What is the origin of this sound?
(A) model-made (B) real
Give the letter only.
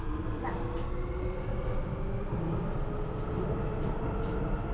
B